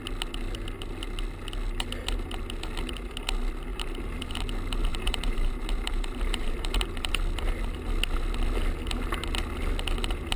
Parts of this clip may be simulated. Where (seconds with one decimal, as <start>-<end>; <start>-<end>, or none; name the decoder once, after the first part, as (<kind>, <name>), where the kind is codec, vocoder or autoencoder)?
3.7-4.4 (vocoder, BigVGAN v2); 4.9-7.1